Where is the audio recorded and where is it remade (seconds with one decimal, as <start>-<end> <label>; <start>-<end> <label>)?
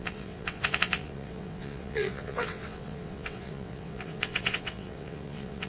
0.0-5.7 remade